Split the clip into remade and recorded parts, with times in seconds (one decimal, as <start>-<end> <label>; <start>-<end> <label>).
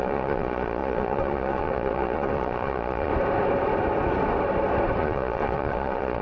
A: 0.0-3.1 remade; 3.1-5.0 recorded; 5.0-6.2 remade